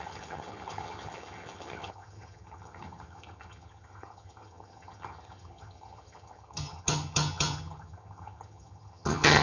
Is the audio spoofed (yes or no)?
yes